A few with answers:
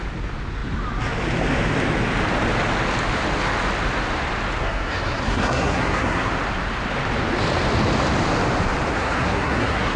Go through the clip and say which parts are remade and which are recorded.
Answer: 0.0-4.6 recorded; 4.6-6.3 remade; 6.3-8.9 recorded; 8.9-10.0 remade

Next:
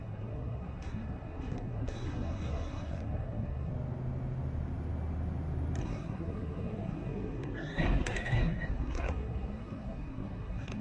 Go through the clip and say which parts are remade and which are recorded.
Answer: 0.0-3.7 remade; 3.7-5.8 recorded; 5.8-10.8 remade

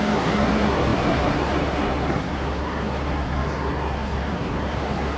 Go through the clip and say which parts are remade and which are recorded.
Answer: 0.0-5.2 remade

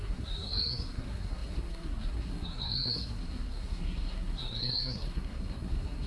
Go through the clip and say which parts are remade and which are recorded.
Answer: 0.0-6.1 remade

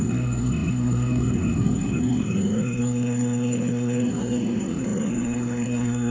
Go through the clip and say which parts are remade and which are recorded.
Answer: 0.0-6.1 remade

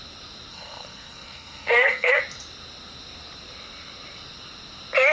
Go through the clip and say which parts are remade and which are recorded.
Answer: 0.0-0.5 recorded; 0.5-2.2 remade; 2.2-5.1 recorded